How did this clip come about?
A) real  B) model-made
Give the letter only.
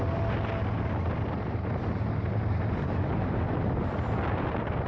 A